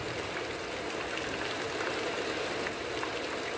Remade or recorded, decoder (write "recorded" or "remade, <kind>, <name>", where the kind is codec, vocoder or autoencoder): recorded